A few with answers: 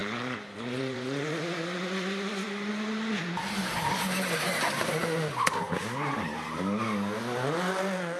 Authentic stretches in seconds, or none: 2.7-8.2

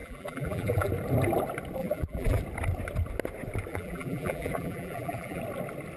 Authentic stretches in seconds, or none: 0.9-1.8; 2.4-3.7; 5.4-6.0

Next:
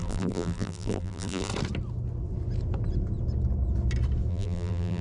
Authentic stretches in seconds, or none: 1.5-4.3

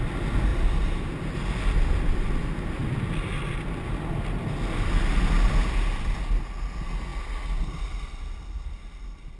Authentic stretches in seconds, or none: 0.0-0.5; 1.1-5.6; 6.2-9.4

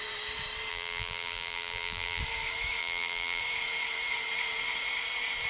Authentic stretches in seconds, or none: 0.0-0.7; 2.2-2.8; 3.4-5.5

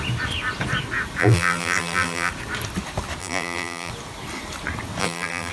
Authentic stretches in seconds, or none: 0.0-1.2; 2.3-3.2; 3.9-5.0

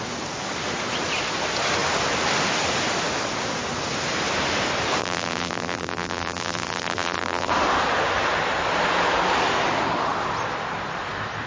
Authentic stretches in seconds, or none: 0.0-5.0; 7.5-11.5

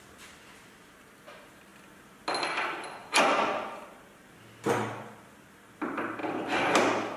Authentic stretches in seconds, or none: 0.0-7.2